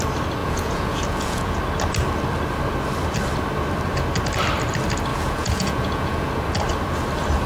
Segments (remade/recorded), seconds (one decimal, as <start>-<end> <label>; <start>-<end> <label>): 0.0-0.4 recorded; 0.4-1.6 remade; 1.6-5.1 recorded; 5.1-6.3 remade; 6.3-7.5 recorded